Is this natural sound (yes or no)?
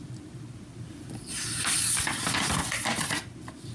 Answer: no